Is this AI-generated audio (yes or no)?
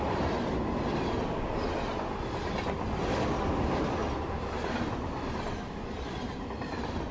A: no